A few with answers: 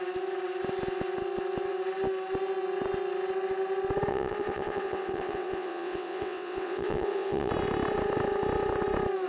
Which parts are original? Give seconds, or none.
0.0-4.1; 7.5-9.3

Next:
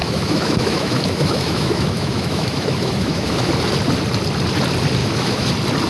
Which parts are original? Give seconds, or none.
3.5-5.0; 5.5-5.9

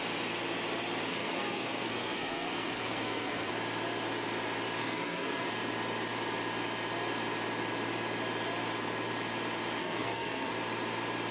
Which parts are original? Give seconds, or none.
0.0-1.1; 3.5-4.8; 5.5-9.8; 10.5-11.3

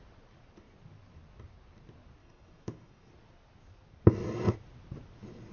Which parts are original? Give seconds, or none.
0.0-2.2; 3.1-5.5